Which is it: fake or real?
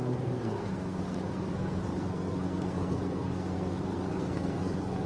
fake